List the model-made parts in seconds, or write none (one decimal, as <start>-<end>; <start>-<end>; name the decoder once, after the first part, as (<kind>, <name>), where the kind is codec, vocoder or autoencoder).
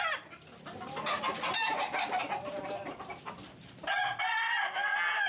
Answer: none